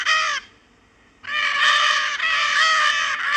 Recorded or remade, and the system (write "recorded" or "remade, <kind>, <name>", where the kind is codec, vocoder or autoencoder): remade, vocoder, BigVGAN v2